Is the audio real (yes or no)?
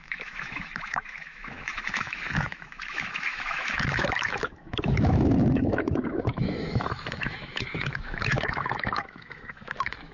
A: no